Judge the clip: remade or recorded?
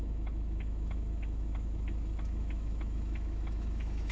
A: remade